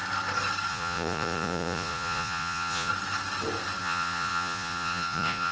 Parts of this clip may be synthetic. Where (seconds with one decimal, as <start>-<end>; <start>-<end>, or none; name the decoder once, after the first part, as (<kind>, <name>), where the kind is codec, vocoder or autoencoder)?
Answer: 0.7-2.9 (vocoder, Vocos); 3.8-5.5